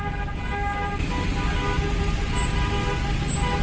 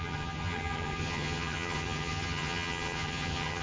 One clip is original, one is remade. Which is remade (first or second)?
second